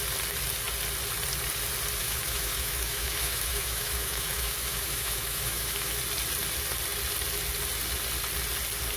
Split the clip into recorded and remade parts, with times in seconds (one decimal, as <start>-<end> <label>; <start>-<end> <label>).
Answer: 0.0-2.0 recorded; 2.0-6.0 remade; 6.0-9.0 recorded